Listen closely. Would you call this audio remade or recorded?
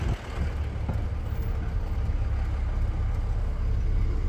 recorded